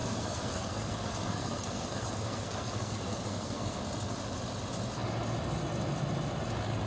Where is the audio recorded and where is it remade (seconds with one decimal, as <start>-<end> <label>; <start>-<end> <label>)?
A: 0.0-3.8 remade; 3.8-6.9 recorded